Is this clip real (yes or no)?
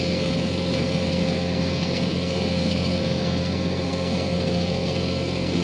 no